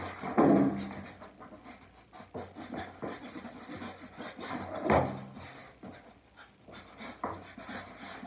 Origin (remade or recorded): recorded